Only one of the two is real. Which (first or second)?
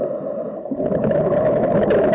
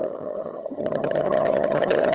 first